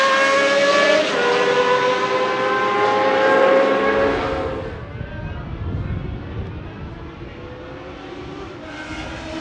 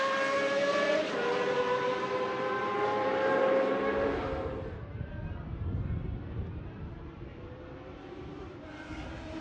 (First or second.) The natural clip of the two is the first